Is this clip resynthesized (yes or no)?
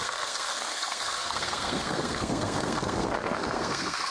yes